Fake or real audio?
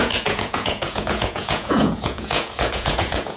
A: fake